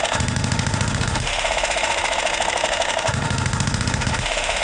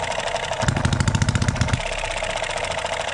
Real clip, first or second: second